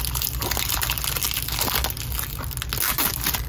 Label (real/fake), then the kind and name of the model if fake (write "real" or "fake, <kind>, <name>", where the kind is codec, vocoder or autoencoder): real